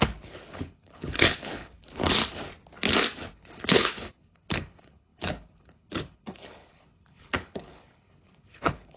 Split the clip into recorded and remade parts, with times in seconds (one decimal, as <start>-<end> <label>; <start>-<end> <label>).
0.0-2.2 remade; 2.2-3.3 recorded; 3.3-9.0 remade